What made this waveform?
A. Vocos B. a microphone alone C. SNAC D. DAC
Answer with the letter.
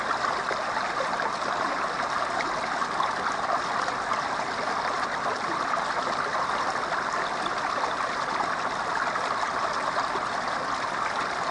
B